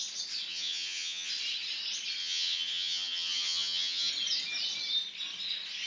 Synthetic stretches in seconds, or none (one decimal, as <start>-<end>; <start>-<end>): 0.5-1.3; 2.2-4.1